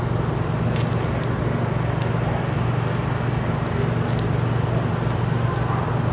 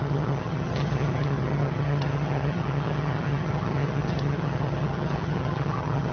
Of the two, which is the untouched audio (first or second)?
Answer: first